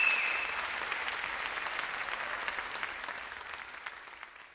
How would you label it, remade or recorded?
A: recorded